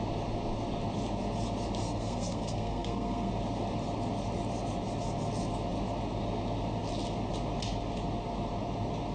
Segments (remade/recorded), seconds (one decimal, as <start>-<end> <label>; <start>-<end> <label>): 0.0-1.8 recorded; 1.8-3.3 remade; 3.3-9.1 recorded